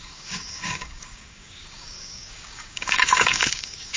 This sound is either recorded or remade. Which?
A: remade